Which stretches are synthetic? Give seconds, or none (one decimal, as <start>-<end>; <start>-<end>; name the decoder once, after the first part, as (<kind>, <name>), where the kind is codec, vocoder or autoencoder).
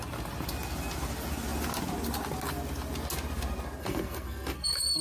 3.8-5.0 (codec, SNAC)